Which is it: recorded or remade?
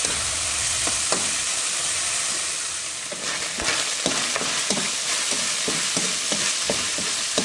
remade